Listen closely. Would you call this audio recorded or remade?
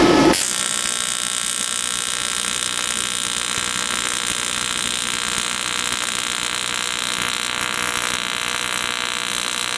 recorded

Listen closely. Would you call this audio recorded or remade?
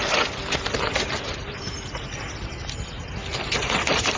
recorded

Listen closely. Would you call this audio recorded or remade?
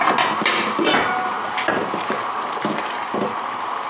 recorded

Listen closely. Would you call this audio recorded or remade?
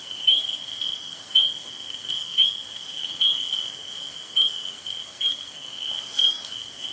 remade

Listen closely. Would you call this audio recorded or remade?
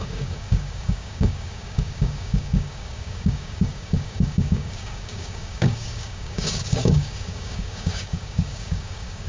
remade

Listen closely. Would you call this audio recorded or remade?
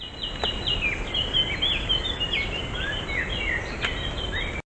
recorded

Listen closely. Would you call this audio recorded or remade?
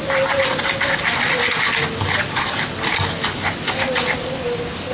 recorded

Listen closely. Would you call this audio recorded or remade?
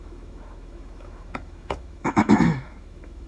remade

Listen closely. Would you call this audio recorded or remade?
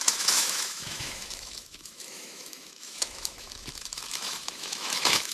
remade